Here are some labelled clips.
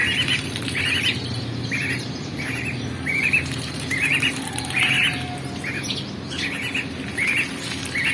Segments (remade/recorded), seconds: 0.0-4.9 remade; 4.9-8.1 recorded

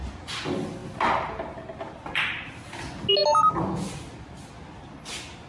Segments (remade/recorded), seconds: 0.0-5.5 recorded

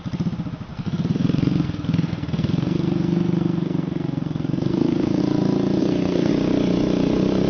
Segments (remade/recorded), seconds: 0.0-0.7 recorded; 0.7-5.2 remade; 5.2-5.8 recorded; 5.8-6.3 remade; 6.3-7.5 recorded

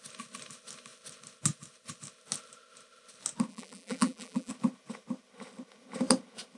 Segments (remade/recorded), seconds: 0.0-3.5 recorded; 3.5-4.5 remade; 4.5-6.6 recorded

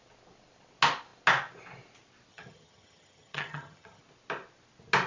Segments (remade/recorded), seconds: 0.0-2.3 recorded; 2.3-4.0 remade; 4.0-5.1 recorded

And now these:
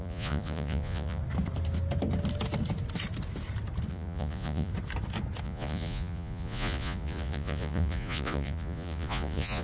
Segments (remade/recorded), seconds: 0.0-1.2 remade; 1.2-3.9 recorded; 3.9-4.7 remade; 4.7-5.4 recorded; 5.4-9.6 remade